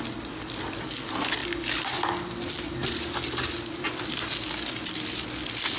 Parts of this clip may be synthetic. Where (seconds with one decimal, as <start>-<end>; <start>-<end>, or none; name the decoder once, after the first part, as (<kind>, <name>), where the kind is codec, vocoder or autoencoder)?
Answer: none

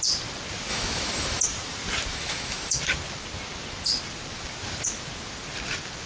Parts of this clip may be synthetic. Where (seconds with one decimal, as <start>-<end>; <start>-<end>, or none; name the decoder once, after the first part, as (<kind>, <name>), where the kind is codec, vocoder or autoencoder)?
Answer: 0.7-1.4 (autoencoder, DAC-VAE); 2.1-2.8

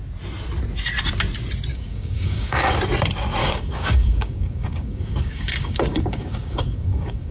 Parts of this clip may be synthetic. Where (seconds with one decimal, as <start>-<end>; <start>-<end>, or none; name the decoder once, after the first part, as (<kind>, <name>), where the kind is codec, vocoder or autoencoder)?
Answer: 1.7-2.7 (codec, DAC); 3.4-7.3

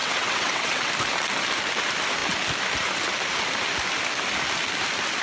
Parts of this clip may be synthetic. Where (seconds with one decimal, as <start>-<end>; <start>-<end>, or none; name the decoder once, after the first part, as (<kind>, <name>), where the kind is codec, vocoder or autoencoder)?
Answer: 0.0-0.9 (vocoder, WaveNeXt)

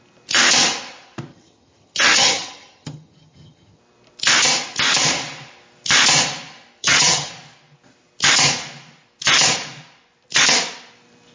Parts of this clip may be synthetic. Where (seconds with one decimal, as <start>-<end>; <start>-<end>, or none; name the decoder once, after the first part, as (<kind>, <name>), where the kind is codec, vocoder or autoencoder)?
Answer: 1.3-3.8 (vocoder, HiFi-GAN); 6.8-7.3

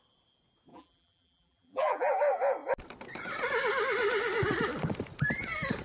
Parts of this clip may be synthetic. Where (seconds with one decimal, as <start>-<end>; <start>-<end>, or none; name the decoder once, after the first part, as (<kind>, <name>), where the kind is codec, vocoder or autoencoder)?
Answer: 0.7-2.1 (vocoder, BigVGAN v2)

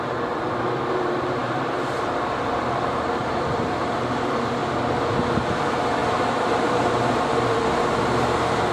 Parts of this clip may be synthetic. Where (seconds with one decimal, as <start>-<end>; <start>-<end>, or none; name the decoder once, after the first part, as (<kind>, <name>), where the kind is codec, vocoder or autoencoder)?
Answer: 0.0-4.6 (vocoder, BigVGAN v2); 5.4-8.7